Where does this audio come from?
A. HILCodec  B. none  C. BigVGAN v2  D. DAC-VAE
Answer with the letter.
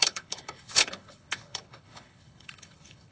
A